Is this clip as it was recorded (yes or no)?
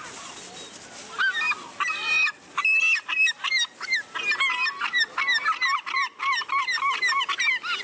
yes